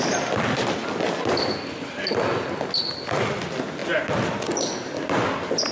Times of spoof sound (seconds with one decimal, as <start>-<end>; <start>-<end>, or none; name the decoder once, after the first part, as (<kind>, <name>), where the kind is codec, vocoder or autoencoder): none